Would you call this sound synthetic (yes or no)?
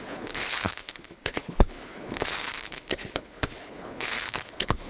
yes